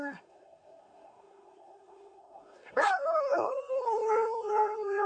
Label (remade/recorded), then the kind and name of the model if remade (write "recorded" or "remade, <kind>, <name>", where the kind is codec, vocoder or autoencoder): remade, codec, SNAC